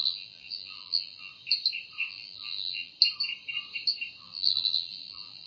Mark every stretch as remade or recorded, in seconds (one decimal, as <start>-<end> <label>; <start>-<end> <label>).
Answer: 0.0-1.3 remade; 1.3-2.1 recorded; 2.1-2.9 remade; 2.9-4.2 recorded; 4.2-5.5 remade